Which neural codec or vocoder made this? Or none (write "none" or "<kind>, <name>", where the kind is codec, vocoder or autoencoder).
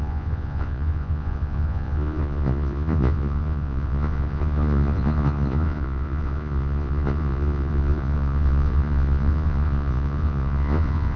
vocoder, Vocos